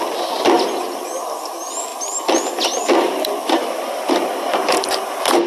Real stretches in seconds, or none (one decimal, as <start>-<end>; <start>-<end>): 0.0-5.5